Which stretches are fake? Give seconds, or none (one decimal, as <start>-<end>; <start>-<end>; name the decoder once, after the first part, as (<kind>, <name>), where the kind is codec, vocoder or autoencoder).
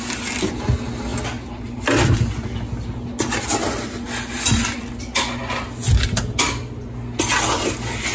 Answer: none